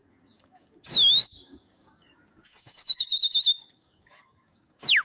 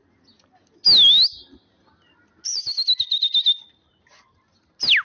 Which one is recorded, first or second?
second